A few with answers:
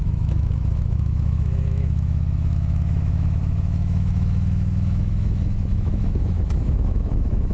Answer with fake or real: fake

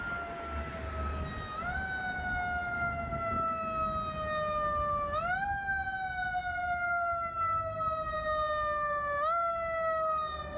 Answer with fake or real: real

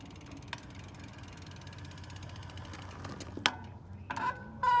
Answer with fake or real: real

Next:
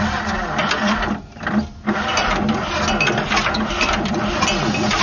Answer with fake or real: real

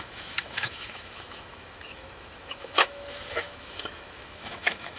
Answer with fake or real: fake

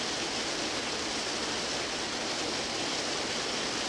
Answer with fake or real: real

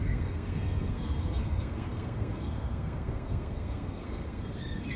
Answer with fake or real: fake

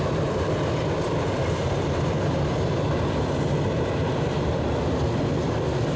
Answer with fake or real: real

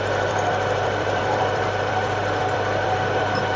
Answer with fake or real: fake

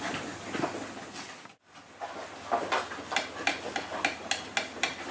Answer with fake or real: real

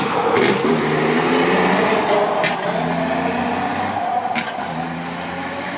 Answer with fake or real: real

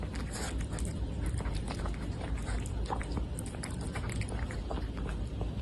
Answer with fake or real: real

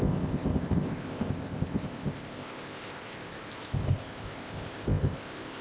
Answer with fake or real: fake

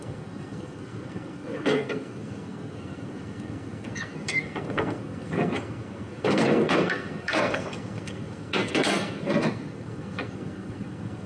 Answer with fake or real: fake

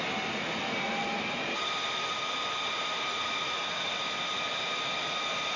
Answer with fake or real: real